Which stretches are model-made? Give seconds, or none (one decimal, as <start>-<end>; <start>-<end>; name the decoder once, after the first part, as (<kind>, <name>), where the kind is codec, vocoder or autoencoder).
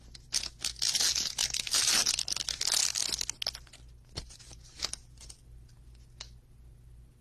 1.4-2.4 (vocoder, BigVGAN v2)